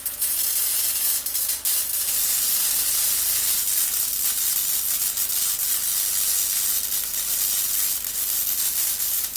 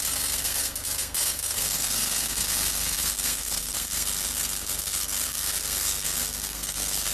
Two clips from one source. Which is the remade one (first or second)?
second